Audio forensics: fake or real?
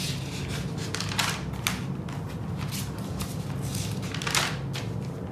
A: real